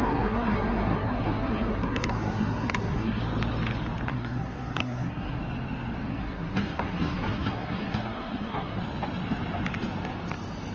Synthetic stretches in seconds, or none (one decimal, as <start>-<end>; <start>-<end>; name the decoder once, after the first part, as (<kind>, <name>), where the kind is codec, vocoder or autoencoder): 0.0-3.2 (codec, SNAC); 4.1-5.4; 6.1-8.8